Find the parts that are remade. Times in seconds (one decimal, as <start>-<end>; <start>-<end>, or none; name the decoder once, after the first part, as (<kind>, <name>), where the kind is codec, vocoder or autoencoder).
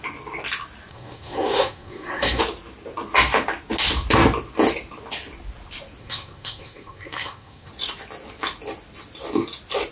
0.9-2.4 (codec, SNAC); 6.0-7.7